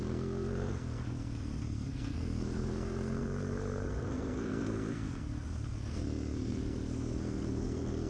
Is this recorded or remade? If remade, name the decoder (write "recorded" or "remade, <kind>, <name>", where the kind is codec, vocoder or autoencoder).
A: remade, codec, SNAC